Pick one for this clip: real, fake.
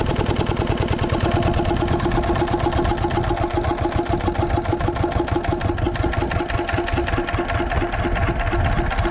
real